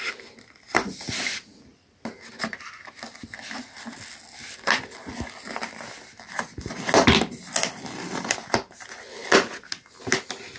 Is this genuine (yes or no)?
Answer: yes